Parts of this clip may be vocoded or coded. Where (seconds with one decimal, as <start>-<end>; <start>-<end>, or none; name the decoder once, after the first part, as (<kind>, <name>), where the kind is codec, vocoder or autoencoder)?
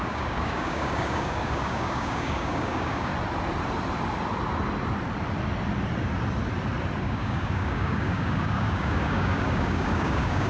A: 0.0-3.1 (codec, DAC); 7.0-10.5